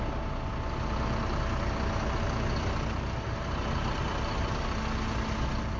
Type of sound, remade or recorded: recorded